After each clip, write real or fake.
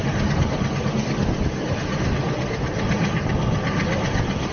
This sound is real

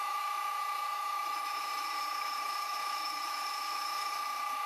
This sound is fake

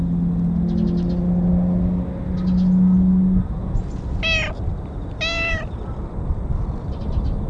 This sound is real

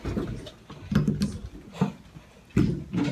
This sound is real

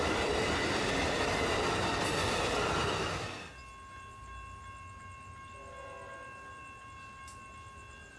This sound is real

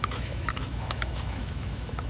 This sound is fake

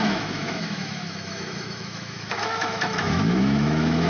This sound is fake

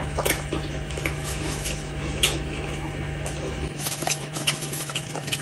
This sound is fake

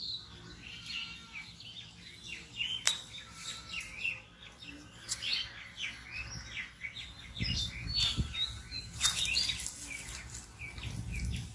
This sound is real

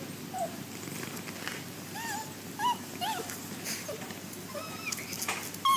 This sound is real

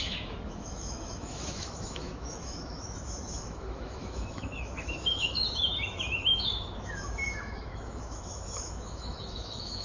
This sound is fake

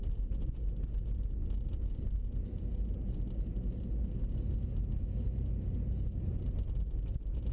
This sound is real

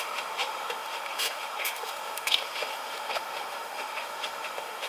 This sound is fake